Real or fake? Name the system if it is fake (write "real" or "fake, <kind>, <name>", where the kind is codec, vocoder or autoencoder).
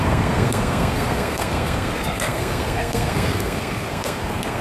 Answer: fake, codec, SNAC